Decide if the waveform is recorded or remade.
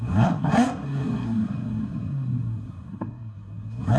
remade